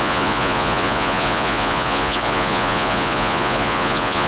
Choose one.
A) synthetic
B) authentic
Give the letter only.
A